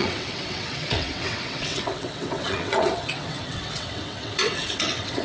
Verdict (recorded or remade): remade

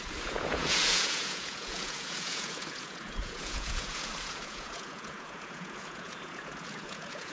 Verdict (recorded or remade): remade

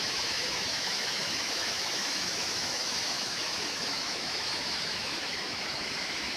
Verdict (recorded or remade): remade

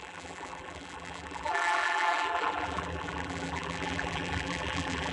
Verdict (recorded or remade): remade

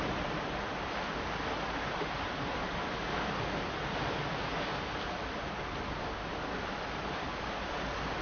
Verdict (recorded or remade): recorded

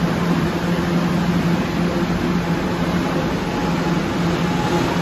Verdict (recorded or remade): recorded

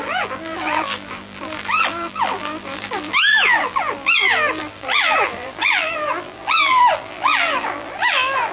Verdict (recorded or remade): remade